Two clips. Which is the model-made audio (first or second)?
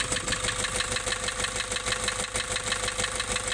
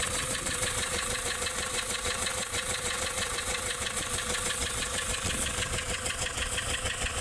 second